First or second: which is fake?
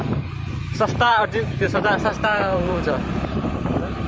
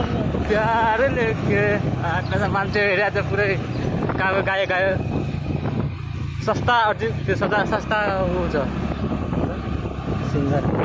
first